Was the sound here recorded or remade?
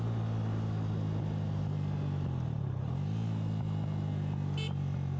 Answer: recorded